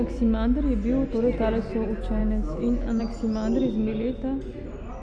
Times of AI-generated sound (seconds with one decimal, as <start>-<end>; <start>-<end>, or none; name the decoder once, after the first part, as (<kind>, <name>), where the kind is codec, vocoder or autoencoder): 2.2-3.0 (autoencoder, DAC-VAE)